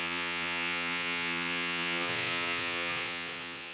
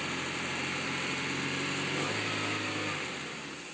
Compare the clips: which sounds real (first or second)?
second